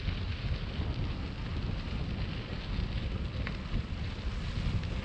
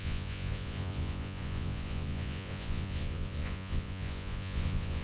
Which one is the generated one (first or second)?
second